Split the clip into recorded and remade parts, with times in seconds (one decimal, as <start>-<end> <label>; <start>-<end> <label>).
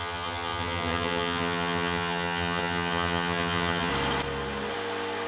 0.0-3.9 remade; 3.9-5.3 recorded